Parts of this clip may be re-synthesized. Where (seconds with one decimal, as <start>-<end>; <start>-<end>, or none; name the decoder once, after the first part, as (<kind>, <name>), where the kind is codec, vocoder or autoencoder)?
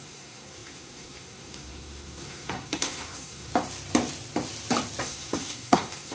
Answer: 0.0-3.5 (codec, SNAC); 5.0-6.1